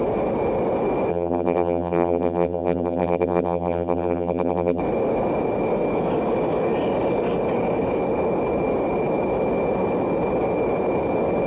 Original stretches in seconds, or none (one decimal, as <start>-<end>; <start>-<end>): 0.0-1.1; 4.8-11.5